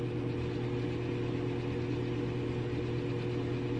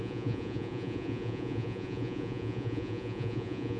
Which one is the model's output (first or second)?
second